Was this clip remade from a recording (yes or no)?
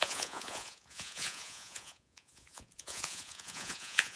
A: yes